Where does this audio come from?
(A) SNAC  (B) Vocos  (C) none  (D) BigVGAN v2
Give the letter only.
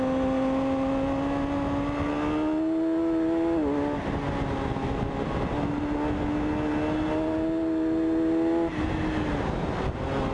C